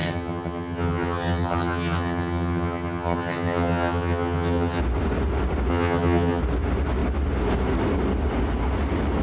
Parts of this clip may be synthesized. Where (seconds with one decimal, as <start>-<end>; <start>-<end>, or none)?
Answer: 0.0-4.8; 5.7-6.4